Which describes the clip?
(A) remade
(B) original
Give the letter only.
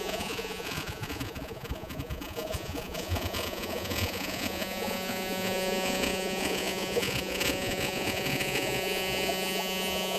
A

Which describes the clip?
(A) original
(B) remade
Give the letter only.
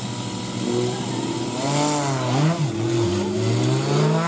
A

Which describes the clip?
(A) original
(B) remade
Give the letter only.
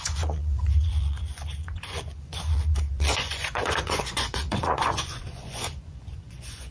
B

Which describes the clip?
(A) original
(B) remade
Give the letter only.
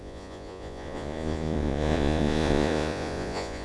B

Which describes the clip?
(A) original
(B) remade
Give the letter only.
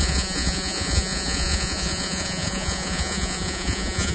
B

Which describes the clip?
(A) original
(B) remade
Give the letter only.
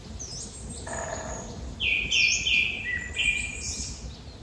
A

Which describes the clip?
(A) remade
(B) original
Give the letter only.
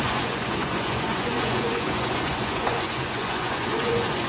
A